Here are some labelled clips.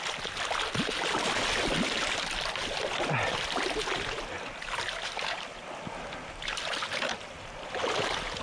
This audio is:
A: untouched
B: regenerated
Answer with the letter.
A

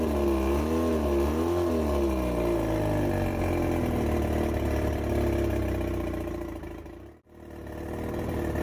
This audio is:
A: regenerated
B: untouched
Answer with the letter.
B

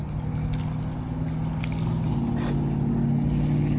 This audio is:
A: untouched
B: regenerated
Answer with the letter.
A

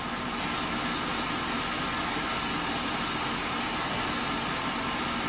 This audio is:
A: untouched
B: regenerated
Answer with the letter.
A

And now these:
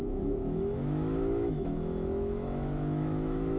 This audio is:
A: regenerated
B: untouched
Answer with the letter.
A